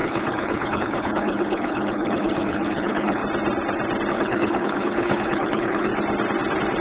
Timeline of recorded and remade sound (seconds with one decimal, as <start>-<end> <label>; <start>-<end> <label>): 0.0-3.2 remade; 3.2-4.1 recorded; 4.1-5.9 remade; 5.9-6.8 recorded